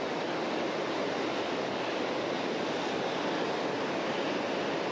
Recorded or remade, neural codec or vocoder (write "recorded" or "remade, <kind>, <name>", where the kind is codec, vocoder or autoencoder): recorded